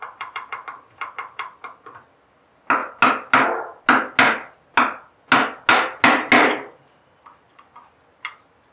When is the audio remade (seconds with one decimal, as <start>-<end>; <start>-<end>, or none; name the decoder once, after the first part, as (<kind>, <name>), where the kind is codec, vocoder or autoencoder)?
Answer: none